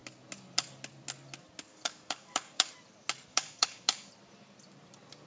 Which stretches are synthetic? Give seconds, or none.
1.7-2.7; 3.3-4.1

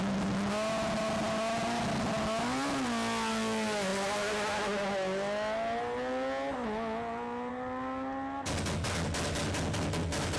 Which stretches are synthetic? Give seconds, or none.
none

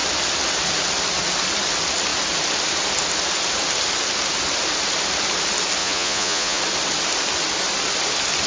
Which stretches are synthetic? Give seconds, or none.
5.8-6.6

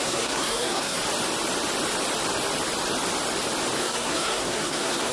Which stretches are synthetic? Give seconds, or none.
0.0-1.0; 3.8-5.1

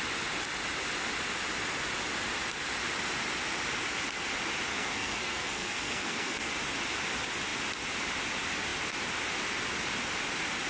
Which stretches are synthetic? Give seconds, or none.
4.7-6.5